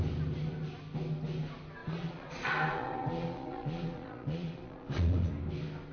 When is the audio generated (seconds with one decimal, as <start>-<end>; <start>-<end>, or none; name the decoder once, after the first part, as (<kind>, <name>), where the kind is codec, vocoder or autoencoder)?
1.8-5.3 (vocoder, Vocos)